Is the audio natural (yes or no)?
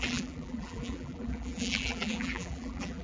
no